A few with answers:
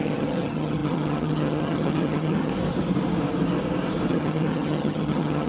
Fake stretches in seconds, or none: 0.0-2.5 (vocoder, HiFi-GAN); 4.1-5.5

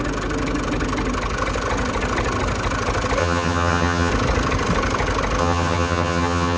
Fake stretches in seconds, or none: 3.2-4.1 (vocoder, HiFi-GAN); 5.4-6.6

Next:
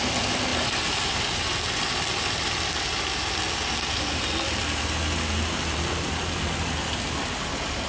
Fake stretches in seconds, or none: none